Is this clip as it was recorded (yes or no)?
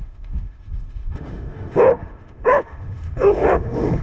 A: no